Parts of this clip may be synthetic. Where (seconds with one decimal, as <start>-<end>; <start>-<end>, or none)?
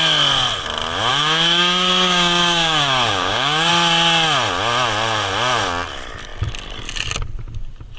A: 1.1-3.7